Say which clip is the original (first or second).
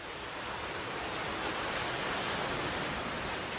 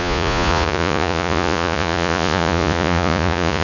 first